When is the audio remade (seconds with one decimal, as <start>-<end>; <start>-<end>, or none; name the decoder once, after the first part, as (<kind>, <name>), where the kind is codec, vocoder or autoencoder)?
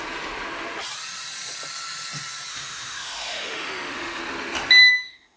2.5-4.2 (autoencoder, DAC-VAE); 4.8-5.4